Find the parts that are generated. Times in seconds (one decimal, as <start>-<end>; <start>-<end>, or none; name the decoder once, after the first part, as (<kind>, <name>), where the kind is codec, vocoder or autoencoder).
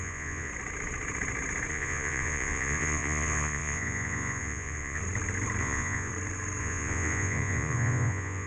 0.0-0.5 (vocoder, Vocos); 1.7-5.0; 5.6-6.1; 6.6-8.5